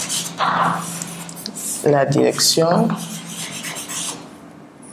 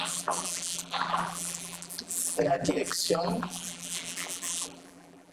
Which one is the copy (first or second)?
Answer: second